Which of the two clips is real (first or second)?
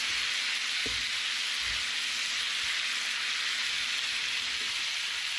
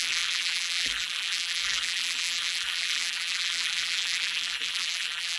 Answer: first